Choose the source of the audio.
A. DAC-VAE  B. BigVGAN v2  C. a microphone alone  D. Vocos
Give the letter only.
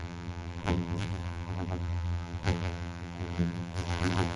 B